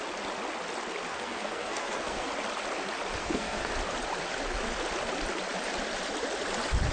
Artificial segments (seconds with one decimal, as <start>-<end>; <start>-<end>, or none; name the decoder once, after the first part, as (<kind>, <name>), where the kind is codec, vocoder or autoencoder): 1.1-2.3 (codec, SNAC); 3.2-3.7